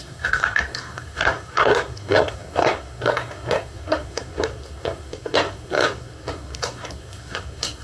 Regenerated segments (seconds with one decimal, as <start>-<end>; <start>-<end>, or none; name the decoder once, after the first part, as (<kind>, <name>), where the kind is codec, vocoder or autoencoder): 0.0-7.8 (codec, SNAC)